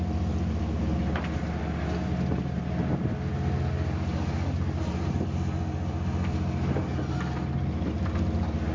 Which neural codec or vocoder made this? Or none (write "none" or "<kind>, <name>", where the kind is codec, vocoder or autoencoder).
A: none